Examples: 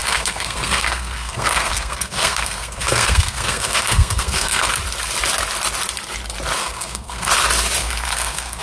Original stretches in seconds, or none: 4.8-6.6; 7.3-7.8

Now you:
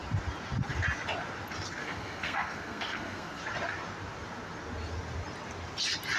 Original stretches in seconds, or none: 0.0-1.8; 3.4-6.2

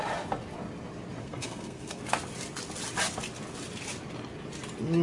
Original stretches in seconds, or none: 0.0-1.2; 2.0-5.0

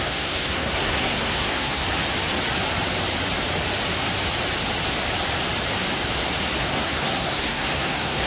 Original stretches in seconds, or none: 1.8-6.6

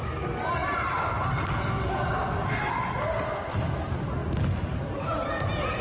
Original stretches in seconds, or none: 0.0-5.8

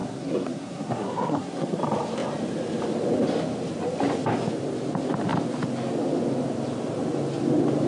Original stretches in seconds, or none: 1.8-7.9

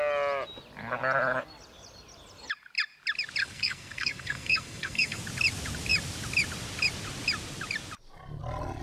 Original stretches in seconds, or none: 0.0-3.4; 5.2-8.8

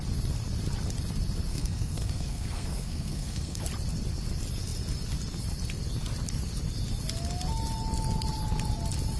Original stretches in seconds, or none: 0.0-1.5; 3.6-9.2